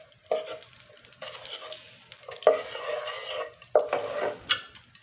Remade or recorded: recorded